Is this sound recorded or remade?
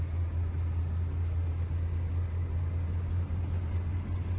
recorded